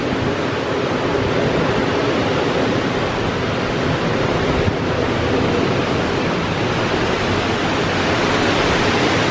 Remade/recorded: recorded